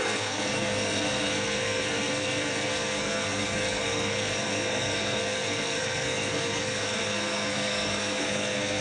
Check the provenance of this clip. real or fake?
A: fake